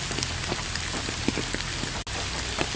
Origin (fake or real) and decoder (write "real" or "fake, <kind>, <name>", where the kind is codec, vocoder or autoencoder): real